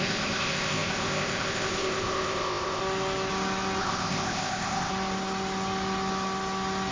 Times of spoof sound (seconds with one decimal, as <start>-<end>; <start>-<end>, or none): 0.0-2.8; 3.8-4.9